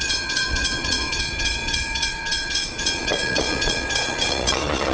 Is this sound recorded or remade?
remade